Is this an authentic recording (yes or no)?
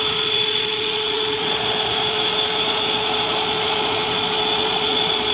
no